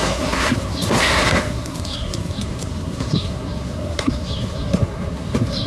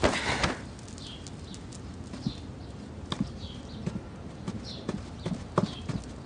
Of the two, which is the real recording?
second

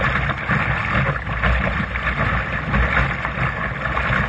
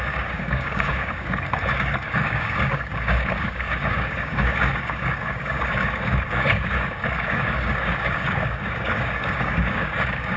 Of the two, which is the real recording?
first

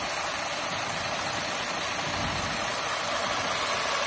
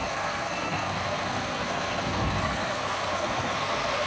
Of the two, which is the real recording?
first